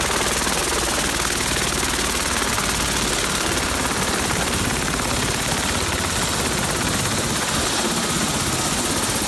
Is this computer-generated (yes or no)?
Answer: no